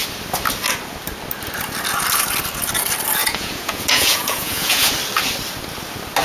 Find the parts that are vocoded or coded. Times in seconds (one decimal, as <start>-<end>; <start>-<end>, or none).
3.2-4.9